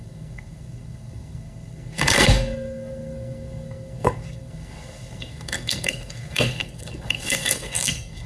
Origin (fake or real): fake